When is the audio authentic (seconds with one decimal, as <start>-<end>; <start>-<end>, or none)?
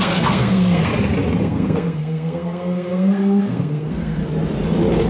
0.9-1.4; 4.2-5.1